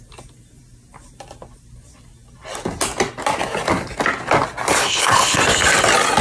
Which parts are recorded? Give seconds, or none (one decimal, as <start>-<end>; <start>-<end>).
0.0-4.8; 5.4-6.2